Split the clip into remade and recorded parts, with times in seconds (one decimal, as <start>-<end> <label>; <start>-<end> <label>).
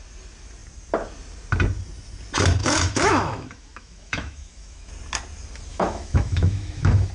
0.0-2.6 recorded; 2.6-4.9 remade; 4.9-5.7 recorded; 5.7-7.1 remade